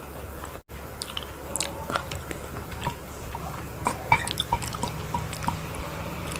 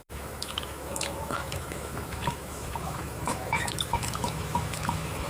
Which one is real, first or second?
first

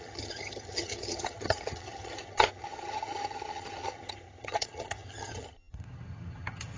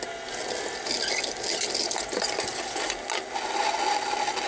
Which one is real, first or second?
second